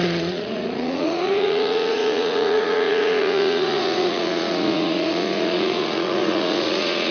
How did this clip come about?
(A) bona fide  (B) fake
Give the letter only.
B